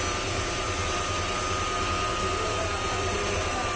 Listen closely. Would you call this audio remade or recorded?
recorded